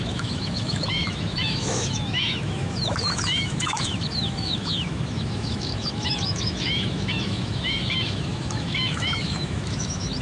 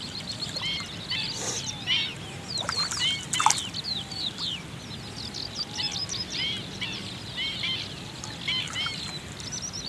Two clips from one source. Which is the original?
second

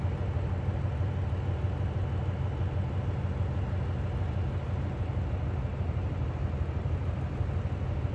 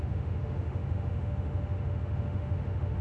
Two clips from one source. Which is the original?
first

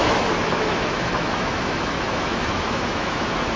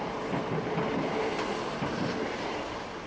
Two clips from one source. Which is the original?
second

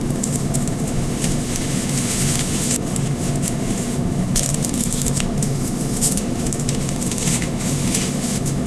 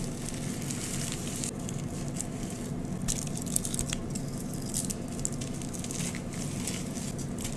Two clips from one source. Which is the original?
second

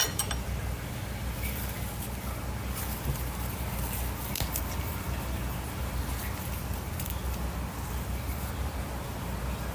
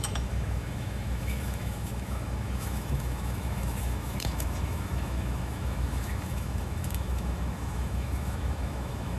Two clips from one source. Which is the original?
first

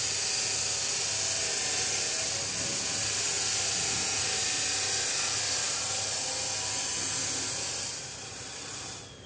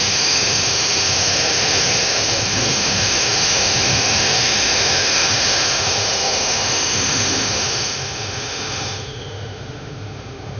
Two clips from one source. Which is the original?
first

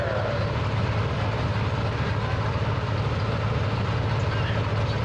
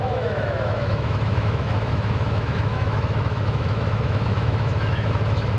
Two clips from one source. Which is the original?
first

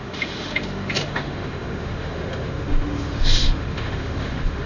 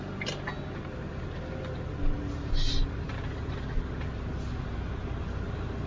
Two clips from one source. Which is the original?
second